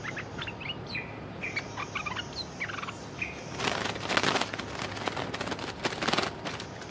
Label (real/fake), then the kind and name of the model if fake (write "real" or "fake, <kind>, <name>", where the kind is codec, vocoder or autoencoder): real